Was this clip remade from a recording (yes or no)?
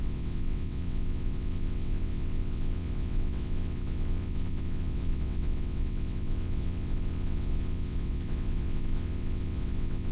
yes